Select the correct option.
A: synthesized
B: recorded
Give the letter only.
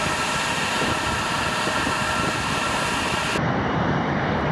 A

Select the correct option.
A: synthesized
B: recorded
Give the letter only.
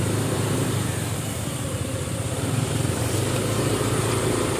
A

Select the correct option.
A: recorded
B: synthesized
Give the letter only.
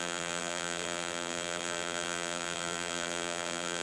B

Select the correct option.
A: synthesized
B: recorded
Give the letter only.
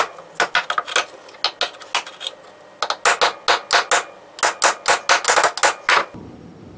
B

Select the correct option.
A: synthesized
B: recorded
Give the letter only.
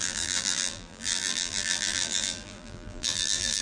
A